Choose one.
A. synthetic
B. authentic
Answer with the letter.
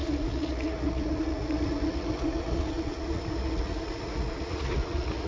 A